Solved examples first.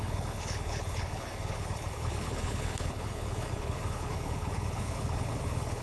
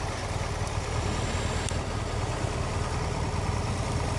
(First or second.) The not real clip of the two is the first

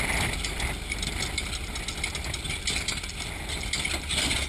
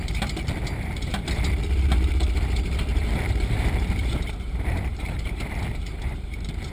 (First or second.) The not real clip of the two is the second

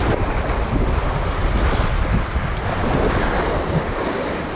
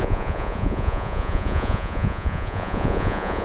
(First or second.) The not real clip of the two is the second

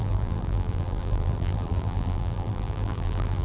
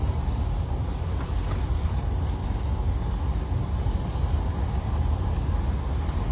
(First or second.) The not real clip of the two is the first